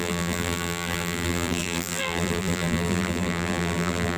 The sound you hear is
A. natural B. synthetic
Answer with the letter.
B